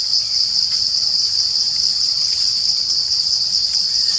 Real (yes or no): yes